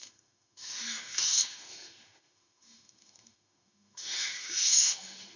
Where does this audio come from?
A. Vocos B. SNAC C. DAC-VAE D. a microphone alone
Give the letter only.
C